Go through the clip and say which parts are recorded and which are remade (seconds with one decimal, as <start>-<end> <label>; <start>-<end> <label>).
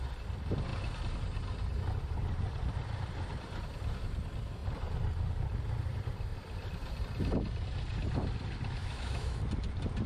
0.0-8.8 recorded; 8.8-9.4 remade; 9.4-10.1 recorded